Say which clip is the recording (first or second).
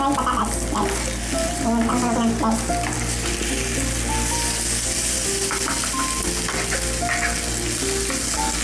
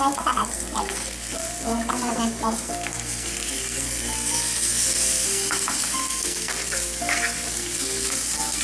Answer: first